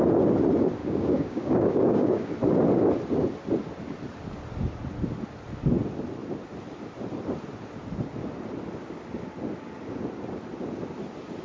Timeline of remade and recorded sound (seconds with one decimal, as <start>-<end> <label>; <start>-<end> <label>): 0.0-0.8 recorded; 0.8-2.3 remade; 2.3-11.4 recorded